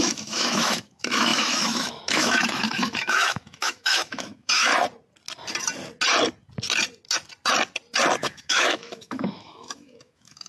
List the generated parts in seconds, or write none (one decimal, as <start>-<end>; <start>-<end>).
0.0-4.7; 8.2-10.5